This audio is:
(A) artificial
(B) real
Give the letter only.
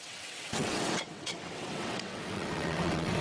A